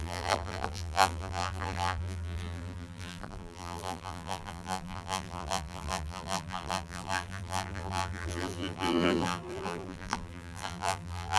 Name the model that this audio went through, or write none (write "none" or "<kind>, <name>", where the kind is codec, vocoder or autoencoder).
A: vocoder, BigVGAN v2